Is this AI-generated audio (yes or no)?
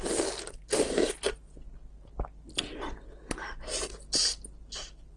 no